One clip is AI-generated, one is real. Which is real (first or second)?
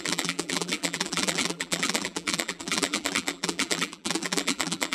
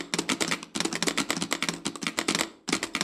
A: second